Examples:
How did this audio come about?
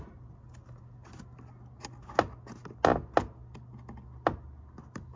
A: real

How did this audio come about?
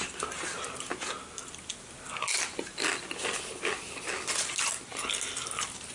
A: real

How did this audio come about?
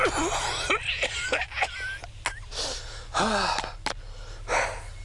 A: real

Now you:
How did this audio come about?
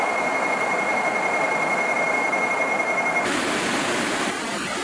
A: real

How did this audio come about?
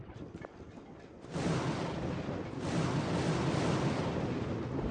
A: real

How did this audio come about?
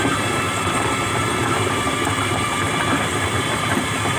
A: fake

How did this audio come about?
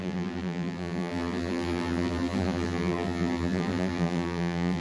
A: fake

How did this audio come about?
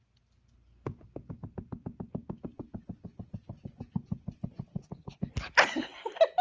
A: real